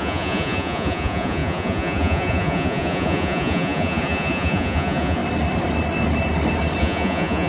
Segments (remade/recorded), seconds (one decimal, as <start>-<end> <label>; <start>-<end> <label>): 0.0-5.2 remade; 5.2-6.8 recorded; 6.8-7.5 remade